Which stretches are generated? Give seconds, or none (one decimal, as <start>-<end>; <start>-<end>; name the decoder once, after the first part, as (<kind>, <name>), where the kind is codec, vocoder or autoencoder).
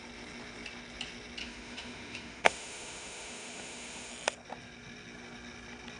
1.4-4.1 (autoencoder, DAC-VAE)